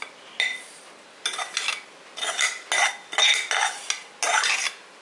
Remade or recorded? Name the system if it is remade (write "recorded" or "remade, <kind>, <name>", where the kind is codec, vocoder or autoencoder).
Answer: recorded